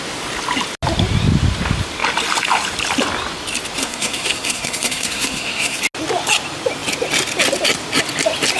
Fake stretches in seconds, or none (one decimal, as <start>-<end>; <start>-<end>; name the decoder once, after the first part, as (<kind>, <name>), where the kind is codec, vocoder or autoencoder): 3.8-5.8 (codec, SNAC)